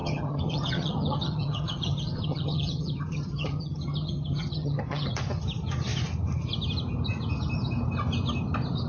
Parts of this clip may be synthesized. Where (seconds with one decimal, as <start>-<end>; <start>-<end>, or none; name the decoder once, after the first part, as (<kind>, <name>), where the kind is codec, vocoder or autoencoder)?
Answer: 0.0-5.1 (vocoder, HiFi-GAN)